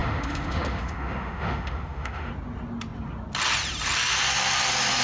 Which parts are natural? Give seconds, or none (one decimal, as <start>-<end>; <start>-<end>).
2.3-5.0